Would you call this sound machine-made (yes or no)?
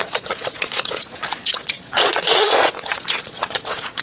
yes